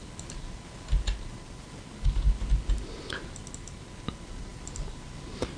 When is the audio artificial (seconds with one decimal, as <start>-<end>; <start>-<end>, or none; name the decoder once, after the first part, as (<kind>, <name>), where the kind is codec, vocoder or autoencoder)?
none